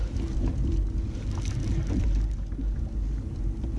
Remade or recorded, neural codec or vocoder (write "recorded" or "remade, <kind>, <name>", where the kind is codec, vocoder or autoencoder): recorded